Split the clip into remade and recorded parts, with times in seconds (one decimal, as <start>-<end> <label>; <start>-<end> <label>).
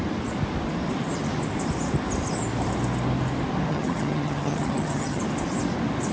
0.0-3.7 recorded; 3.7-5.2 remade; 5.2-6.1 recorded